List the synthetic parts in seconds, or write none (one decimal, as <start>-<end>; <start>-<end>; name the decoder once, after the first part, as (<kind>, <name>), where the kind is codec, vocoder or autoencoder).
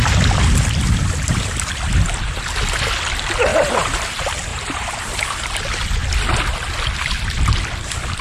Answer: 3.5-4.1 (vocoder, BigVGAN v2); 4.5-5.5